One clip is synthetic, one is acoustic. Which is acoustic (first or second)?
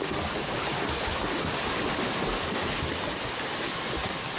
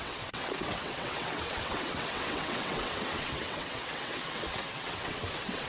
first